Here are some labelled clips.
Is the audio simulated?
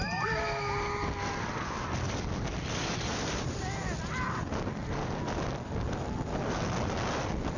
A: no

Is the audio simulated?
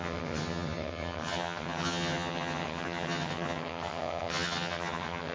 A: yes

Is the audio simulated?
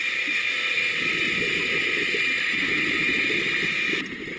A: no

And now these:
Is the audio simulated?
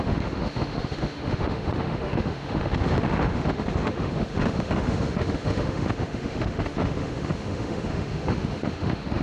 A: yes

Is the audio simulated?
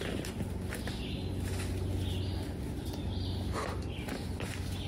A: no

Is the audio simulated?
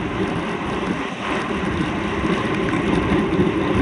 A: no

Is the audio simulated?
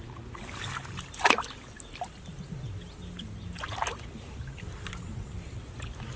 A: no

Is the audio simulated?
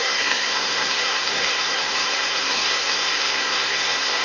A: yes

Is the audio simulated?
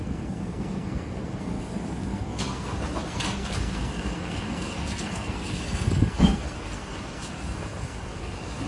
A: yes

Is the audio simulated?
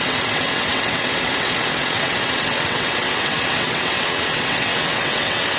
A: yes